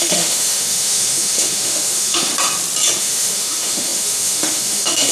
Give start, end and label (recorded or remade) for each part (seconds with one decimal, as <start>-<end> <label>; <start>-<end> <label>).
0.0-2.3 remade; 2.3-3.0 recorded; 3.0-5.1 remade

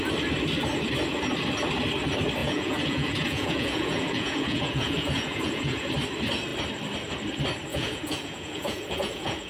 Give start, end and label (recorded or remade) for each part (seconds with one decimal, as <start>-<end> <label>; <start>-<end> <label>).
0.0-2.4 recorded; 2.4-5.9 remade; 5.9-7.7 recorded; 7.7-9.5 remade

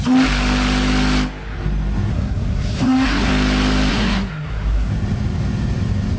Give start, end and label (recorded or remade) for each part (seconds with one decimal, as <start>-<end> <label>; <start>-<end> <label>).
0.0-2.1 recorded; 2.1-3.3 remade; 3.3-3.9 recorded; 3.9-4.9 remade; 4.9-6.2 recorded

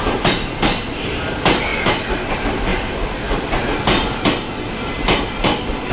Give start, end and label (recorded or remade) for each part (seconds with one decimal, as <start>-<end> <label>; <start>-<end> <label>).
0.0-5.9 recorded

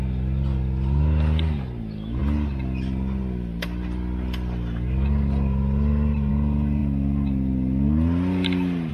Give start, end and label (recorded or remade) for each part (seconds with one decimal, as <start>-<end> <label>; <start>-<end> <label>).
0.0-8.9 recorded

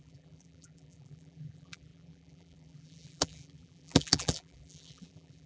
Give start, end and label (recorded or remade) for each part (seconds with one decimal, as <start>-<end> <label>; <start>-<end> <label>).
0.0-5.5 remade

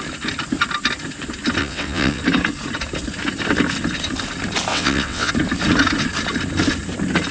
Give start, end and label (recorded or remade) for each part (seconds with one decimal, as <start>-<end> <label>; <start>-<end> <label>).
0.0-1.6 recorded; 1.6-2.2 remade; 2.2-4.7 recorded; 4.7-5.3 remade; 5.3-7.3 recorded

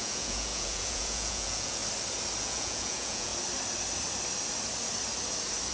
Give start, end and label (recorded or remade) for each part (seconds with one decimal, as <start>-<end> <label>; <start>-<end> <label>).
0.0-1.8 remade; 1.8-2.4 recorded; 2.4-3.3 remade; 3.3-5.7 recorded